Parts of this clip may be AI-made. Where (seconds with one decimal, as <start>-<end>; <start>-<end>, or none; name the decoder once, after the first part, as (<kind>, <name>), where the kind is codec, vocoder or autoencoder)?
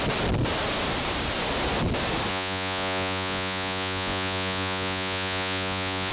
2.3-6.1 (vocoder, Vocos)